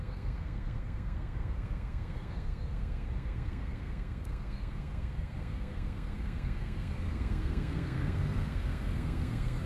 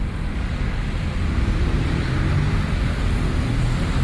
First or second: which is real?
second